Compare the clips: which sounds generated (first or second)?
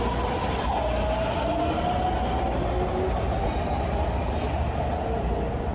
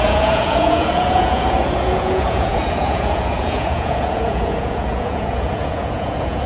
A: second